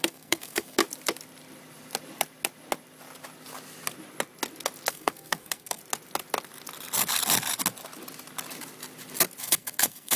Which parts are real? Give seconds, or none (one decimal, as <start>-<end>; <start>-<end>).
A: 0.8-4.9; 5.8-9.4